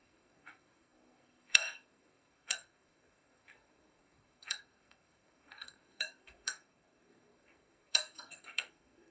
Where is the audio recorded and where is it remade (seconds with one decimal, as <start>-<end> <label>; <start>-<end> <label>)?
0.0-9.1 remade